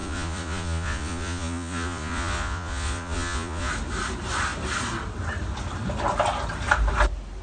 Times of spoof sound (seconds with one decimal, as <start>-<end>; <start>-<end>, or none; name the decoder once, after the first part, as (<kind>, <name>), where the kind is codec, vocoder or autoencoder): 0.0-3.7 (vocoder, Vocos)